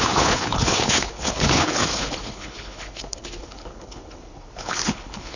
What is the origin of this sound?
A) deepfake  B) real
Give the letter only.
A